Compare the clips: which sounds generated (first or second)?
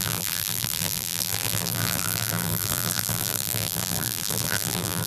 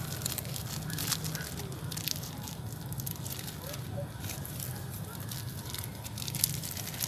first